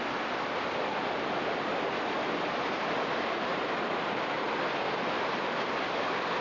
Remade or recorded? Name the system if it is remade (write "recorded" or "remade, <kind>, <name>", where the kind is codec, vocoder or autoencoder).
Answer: recorded